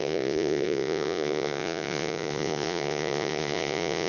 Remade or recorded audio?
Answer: remade